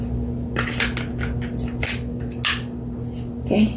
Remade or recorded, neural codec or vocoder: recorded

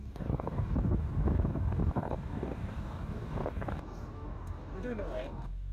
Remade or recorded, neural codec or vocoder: remade, codec, DAC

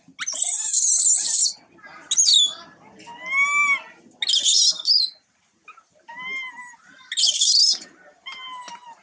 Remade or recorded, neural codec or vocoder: recorded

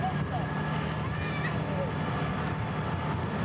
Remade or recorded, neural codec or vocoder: recorded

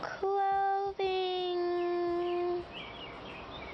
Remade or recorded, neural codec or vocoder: recorded